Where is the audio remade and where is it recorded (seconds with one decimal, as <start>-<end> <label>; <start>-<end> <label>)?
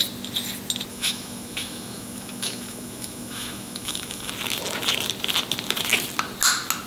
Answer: 0.0-0.9 recorded; 0.9-4.3 remade; 4.3-6.9 recorded